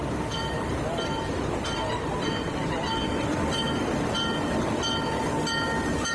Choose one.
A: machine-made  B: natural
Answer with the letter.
B